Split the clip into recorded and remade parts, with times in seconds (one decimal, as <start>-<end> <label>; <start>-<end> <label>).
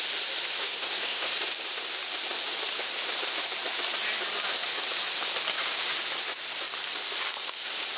0.0-0.6 recorded; 0.6-1.3 remade; 1.3-8.0 recorded